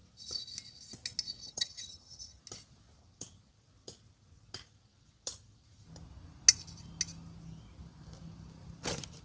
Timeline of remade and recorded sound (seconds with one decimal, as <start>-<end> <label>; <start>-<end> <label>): 0.0-1.4 recorded; 1.4-2.4 remade; 2.4-9.2 recorded